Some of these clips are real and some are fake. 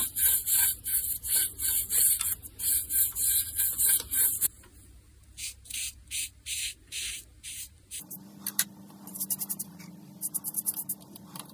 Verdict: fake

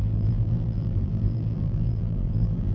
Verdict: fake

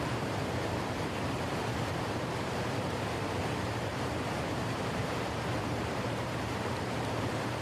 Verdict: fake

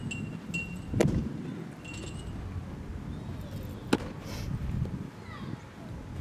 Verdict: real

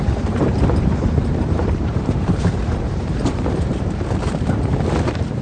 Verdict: fake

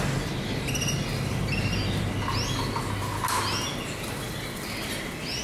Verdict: real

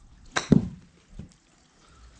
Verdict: real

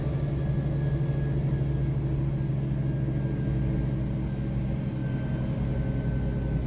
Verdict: real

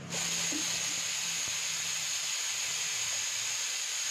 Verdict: real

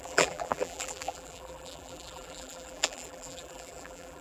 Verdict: fake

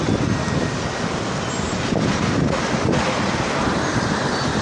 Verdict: real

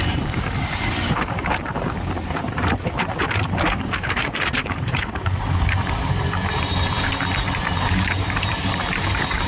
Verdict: fake